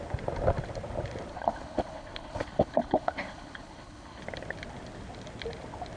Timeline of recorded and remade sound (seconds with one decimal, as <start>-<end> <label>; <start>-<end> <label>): 0.0-1.3 recorded; 1.3-4.2 remade; 4.2-6.0 recorded